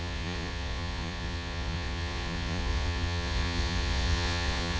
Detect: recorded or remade remade